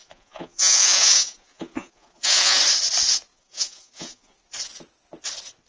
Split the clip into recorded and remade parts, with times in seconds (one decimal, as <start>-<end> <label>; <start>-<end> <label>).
0.0-2.6 remade; 2.6-3.3 recorded; 3.3-4.4 remade; 4.4-5.7 recorded